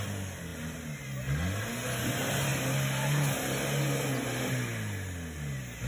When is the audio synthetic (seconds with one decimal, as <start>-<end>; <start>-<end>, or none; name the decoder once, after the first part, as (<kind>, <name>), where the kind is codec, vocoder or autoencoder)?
none